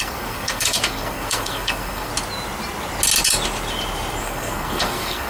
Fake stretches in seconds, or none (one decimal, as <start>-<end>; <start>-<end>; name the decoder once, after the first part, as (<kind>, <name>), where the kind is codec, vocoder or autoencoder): 0.0-2.1 (codec, SNAC); 4.2-5.3